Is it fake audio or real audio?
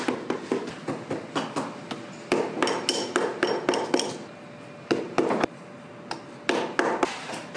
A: real